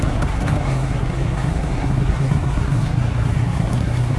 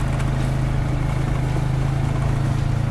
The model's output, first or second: first